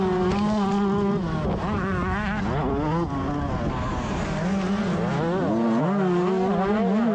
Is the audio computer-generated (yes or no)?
no